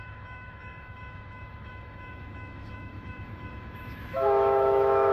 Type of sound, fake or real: fake